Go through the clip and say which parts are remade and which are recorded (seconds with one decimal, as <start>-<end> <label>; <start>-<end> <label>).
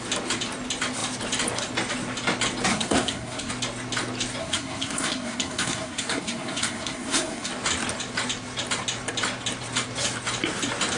0.0-2.7 recorded; 2.7-3.5 remade; 3.5-4.4 recorded; 4.4-7.5 remade; 7.5-11.0 recorded